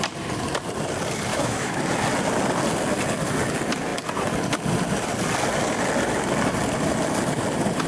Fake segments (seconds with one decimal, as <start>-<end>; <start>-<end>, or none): 1.3-1.8